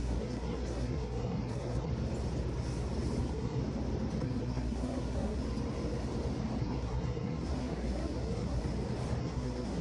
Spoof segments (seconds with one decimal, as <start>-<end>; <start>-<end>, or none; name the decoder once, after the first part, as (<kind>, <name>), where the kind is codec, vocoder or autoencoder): 0.0-1.9 (codec, SNAC); 3.2-3.6; 4.2-5.4; 6.6-8.6; 9.2-9.8

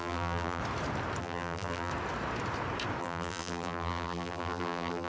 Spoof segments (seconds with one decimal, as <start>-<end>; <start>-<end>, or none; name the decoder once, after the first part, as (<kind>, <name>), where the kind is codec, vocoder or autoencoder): 0.0-0.6 (vocoder, BigVGAN v2); 1.2-1.9; 3.0-5.1

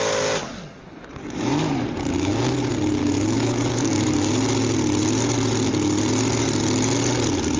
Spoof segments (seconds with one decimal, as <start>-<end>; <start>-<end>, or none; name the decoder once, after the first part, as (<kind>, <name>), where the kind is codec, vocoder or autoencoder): 0.8-2.5 (codec, DAC); 3.0-4.3

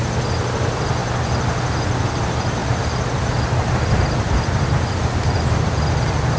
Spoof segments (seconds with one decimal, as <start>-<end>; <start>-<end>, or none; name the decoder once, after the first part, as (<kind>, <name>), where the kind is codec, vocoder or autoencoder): 2.6-3.4 (vocoder, BigVGAN v2)

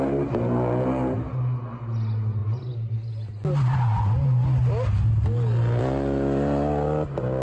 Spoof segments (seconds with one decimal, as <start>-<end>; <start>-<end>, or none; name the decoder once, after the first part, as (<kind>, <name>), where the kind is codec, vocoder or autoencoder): none

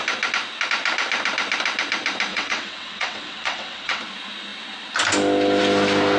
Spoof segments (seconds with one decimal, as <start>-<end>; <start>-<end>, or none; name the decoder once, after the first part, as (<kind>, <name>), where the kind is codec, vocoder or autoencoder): 2.3-4.0 (vocoder, WaveNeXt)